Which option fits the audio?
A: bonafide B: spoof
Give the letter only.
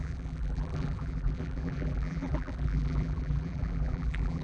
B